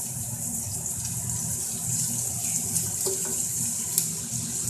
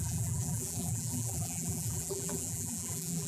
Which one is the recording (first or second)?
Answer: first